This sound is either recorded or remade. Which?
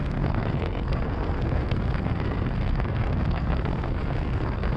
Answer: remade